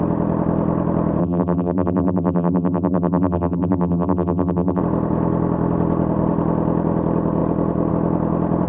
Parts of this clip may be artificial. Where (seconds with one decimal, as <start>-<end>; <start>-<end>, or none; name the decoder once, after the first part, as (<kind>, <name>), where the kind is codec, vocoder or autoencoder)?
1.2-4.8 (vocoder, BigVGAN v2)